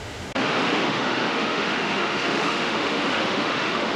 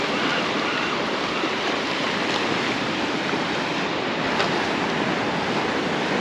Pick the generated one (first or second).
first